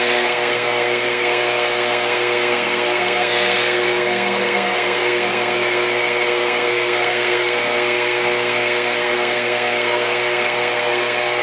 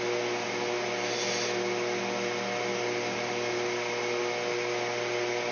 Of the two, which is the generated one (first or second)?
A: first